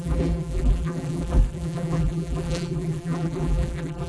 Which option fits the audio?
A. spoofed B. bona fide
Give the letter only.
A